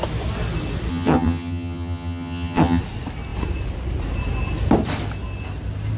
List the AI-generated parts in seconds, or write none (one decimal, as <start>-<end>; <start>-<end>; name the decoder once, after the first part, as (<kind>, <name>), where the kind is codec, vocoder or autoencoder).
0.9-2.8 (vocoder, HiFi-GAN)